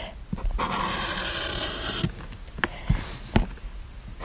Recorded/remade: recorded